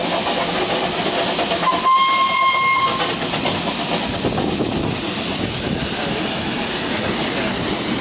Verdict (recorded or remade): recorded